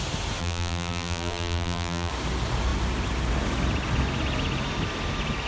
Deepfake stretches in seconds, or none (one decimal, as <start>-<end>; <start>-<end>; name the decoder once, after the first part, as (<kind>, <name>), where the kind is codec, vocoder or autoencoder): 0.4-2.1 (vocoder, BigVGAN v2)